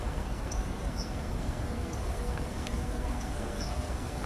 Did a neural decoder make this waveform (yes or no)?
yes